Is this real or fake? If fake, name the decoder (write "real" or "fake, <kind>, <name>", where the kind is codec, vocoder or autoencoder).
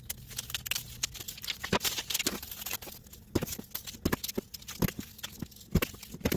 real